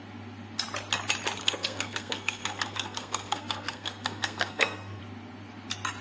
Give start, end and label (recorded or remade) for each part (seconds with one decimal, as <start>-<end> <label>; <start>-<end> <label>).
0.0-1.4 recorded; 1.4-5.0 remade; 5.0-6.0 recorded